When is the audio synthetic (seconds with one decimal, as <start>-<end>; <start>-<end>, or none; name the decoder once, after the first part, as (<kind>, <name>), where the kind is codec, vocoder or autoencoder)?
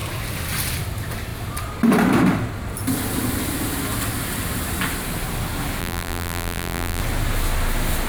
5.8-7.0 (vocoder, BigVGAN v2)